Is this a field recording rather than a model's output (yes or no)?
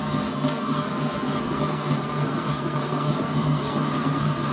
no